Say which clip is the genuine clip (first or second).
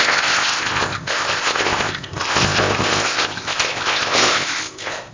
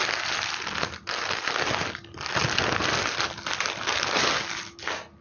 second